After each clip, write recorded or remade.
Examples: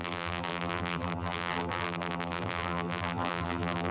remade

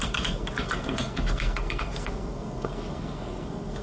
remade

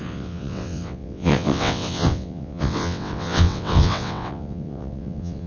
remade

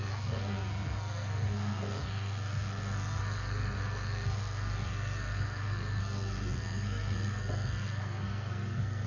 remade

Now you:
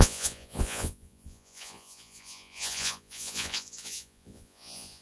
remade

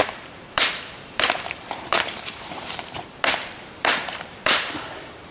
remade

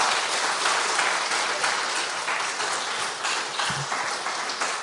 recorded